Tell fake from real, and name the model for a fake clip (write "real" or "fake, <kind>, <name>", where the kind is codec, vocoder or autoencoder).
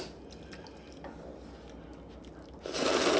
real